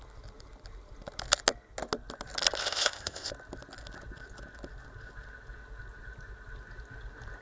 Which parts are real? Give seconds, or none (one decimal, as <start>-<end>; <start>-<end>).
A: 0.0-2.6; 3.3-7.4

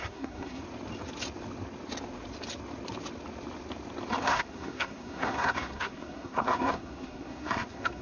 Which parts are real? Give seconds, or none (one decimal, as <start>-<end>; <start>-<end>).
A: 0.6-4.2

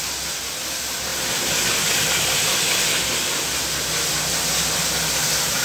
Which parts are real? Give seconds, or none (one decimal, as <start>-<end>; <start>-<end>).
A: 0.0-5.6